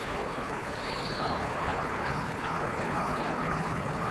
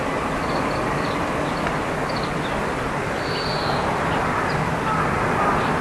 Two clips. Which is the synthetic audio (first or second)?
first